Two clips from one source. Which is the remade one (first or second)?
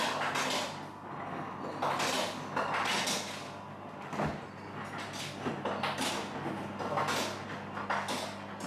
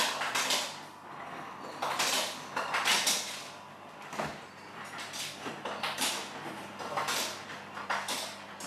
second